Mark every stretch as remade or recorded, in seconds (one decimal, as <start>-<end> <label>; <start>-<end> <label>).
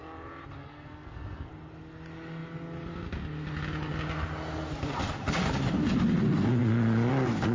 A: 0.0-0.6 recorded; 0.6-1.5 remade; 1.5-7.5 recorded